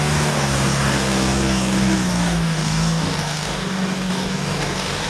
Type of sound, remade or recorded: remade